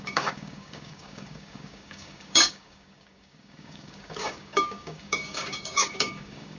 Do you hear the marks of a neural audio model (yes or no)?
yes